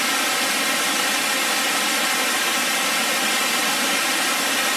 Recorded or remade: recorded